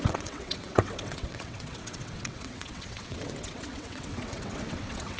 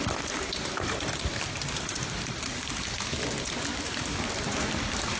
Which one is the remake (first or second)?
first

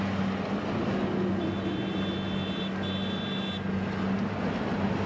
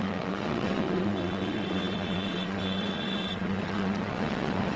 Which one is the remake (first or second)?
second